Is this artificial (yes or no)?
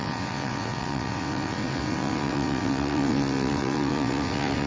yes